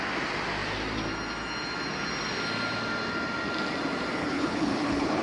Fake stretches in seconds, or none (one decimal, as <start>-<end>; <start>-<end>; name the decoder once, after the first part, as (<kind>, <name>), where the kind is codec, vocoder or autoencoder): 4.2-5.2 (codec, HILCodec)

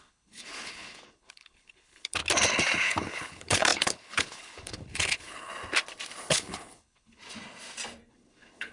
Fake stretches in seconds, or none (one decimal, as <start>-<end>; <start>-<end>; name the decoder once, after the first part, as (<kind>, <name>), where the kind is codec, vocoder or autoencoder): 0.0-2.2 (codec, HILCodec); 2.8-5.5; 6.3-7.2; 8.1-8.7

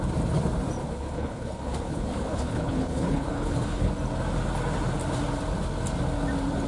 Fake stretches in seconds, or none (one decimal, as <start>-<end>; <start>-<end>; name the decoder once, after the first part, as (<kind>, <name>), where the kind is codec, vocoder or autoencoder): 0.8-3.9 (codec, HILCodec)